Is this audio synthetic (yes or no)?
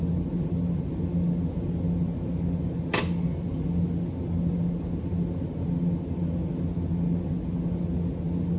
no